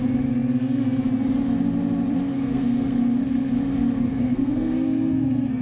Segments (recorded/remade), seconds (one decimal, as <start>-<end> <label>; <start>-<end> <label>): 0.0-2.3 recorded; 2.3-3.5 remade; 3.5-4.1 recorded; 4.1-5.6 remade